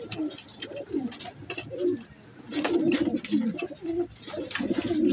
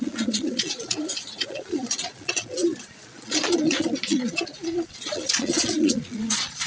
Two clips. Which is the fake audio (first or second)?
second